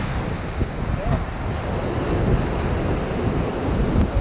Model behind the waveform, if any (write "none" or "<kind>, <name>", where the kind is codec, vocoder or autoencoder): none